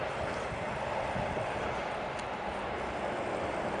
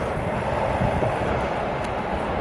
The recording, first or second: first